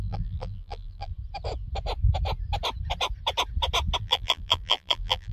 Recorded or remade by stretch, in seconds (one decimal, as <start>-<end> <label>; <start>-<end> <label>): 0.0-1.1 remade; 1.1-4.0 recorded; 4.0-5.3 remade